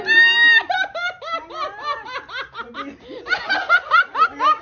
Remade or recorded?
recorded